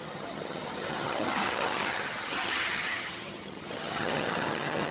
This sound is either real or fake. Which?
fake